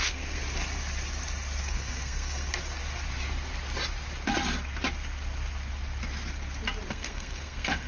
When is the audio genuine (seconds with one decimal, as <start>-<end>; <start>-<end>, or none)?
0.4-1.6; 2.5-6.9